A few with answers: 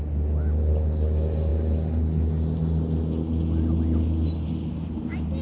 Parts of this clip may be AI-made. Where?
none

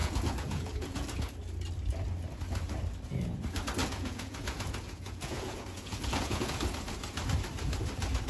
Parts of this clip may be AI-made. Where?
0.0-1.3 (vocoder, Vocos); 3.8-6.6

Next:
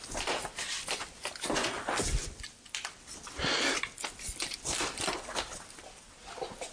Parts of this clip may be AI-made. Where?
none

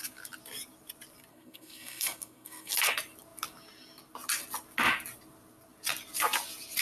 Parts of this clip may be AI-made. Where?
1.3-2.7 (codec, SNAC)

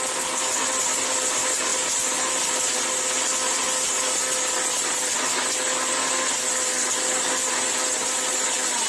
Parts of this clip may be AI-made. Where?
none

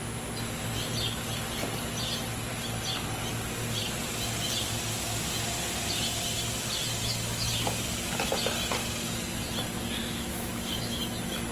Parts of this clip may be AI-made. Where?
10.0-11.0 (autoencoder, DAC-VAE)

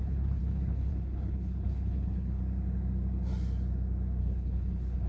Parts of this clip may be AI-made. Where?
0.0-2.4 (codec, HILCodec); 4.2-5.1